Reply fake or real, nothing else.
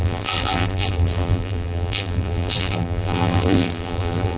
fake